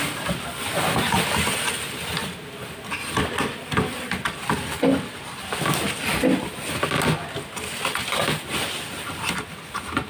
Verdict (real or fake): real